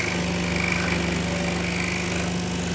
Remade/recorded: recorded